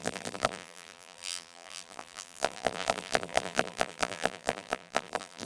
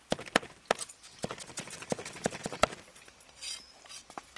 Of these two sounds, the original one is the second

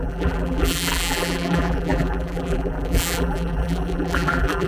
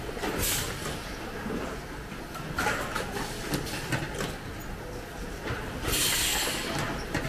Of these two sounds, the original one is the second